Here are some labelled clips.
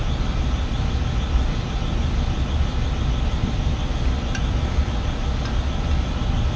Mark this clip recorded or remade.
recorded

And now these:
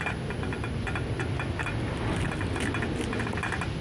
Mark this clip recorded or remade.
recorded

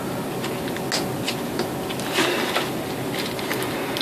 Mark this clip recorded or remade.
recorded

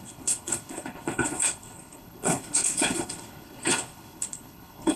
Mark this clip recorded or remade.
remade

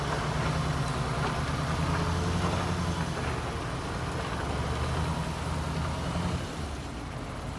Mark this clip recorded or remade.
recorded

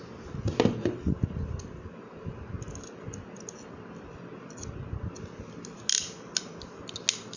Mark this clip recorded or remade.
recorded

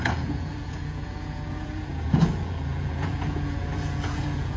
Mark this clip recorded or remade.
remade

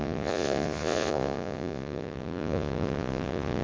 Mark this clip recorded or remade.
remade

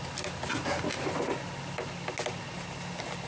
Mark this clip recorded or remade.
recorded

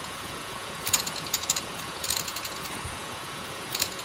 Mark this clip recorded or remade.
remade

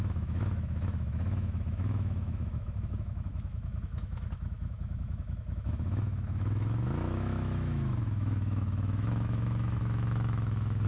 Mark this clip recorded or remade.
remade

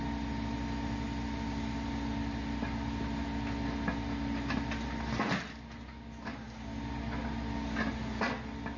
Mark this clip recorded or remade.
recorded